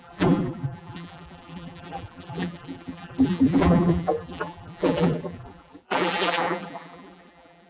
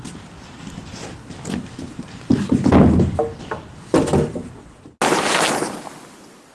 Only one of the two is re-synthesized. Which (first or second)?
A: first